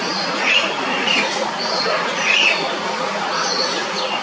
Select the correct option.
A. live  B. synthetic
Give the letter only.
B